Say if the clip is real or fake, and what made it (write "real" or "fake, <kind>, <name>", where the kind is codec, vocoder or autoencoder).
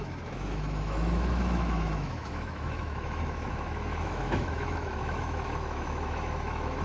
fake, autoencoder, DAC-VAE